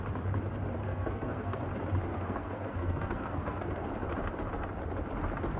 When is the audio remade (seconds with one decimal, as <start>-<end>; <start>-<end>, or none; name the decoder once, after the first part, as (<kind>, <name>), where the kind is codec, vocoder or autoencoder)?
0.8-1.6 (codec, SNAC); 2.1-3.9